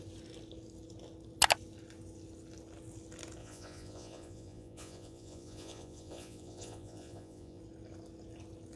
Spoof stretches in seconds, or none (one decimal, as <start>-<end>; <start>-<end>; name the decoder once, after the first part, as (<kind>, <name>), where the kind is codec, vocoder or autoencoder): 3.4-7.6 (vocoder, Vocos)